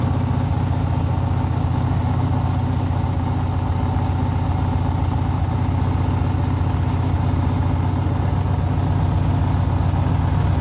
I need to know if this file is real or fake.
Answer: real